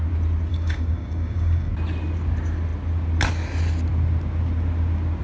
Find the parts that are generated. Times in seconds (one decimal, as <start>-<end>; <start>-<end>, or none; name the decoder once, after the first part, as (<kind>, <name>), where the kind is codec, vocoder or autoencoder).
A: 0.5-1.7 (codec, DAC)